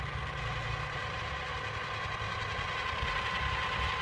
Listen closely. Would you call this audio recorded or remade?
recorded